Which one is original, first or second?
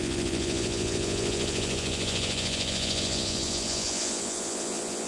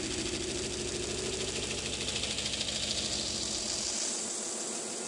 second